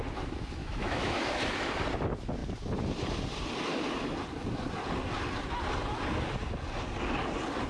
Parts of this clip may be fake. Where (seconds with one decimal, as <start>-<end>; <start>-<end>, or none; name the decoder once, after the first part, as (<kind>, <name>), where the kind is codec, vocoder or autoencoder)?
0.6-1.4 (autoencoder, DAC-VAE)